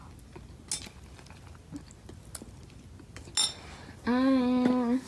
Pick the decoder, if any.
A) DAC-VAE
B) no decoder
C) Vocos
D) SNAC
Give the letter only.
B